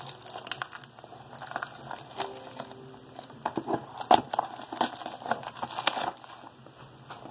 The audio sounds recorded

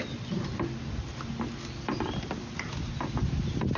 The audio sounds recorded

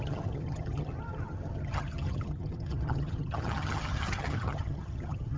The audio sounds remade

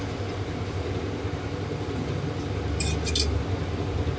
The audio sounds recorded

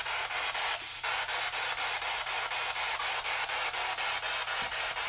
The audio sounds recorded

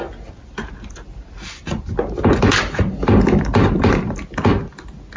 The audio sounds recorded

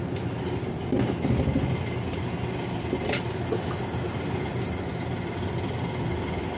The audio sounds recorded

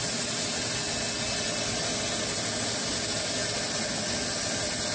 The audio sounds recorded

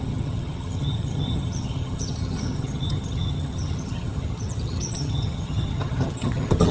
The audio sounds remade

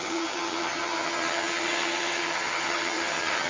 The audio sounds remade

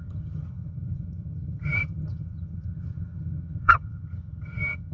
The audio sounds remade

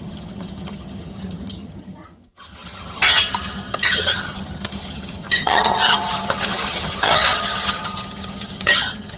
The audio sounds remade